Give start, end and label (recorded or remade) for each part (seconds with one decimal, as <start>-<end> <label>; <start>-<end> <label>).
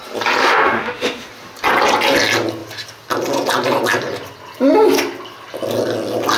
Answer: 0.0-0.4 recorded; 0.4-1.3 remade; 1.3-6.4 recorded